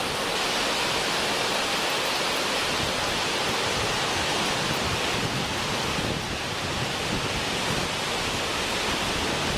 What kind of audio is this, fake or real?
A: real